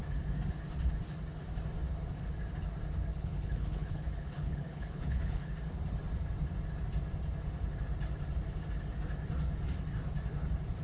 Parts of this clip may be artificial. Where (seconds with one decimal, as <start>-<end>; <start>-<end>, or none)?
3.1-5.5

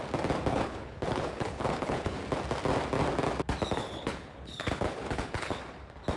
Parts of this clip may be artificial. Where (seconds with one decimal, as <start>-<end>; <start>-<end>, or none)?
0.5-2.2; 3.8-5.6

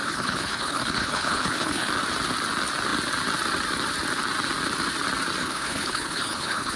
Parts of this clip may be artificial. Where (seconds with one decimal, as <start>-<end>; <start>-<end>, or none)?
0.0-1.9; 5.4-6.8